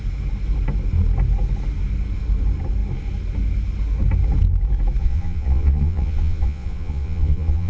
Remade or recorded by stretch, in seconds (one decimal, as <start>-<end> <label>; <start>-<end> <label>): 0.0-5.0 recorded; 5.0-7.7 remade